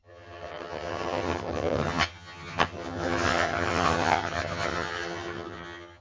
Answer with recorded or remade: remade